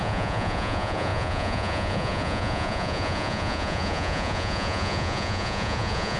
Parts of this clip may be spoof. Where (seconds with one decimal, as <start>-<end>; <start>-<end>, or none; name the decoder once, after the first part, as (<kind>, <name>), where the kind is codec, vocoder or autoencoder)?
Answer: 0.0-6.2 (vocoder, Vocos)